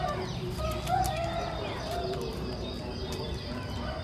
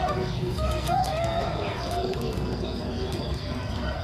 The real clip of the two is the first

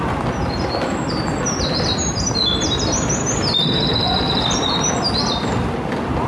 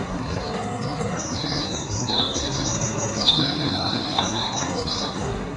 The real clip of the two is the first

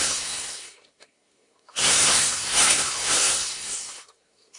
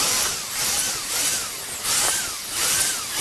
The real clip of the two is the second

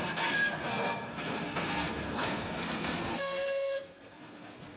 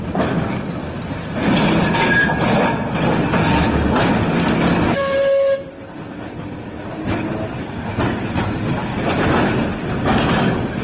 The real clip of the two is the second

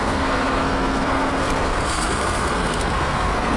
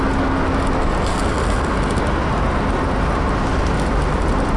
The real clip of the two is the second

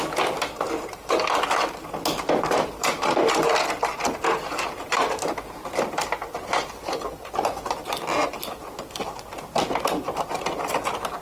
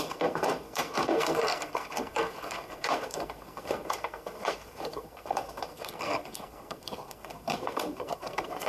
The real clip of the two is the first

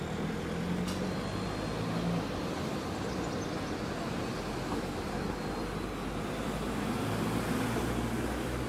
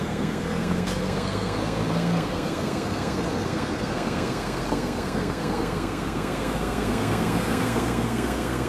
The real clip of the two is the first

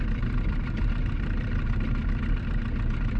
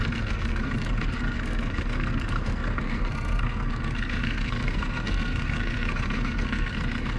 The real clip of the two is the first